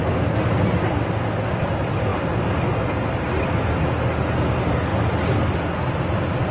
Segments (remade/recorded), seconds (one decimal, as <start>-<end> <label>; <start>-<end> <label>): 0.0-6.5 recorded